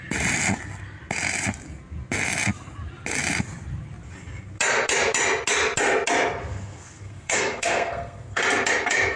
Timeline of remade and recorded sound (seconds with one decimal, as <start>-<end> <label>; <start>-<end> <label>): 0.0-6.5 recorded; 6.5-8.4 remade; 8.4-9.2 recorded